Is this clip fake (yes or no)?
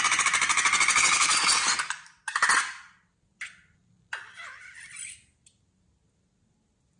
no